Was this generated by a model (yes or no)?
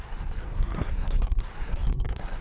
yes